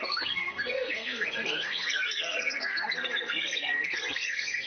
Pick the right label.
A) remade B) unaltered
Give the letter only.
A